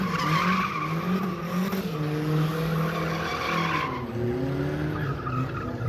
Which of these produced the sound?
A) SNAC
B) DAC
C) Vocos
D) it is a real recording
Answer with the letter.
D